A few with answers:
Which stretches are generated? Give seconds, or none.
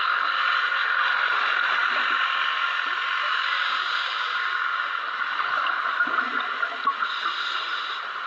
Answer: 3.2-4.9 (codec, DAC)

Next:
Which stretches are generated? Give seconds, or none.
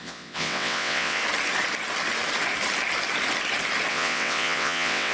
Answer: 0.0-1.2 (vocoder, WaveNeXt); 3.9-5.1